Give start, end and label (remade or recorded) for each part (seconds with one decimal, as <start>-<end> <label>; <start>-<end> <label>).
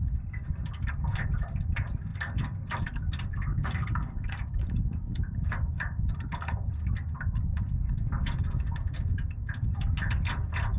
0.0-3.5 recorded; 3.5-6.1 remade; 6.1-10.8 recorded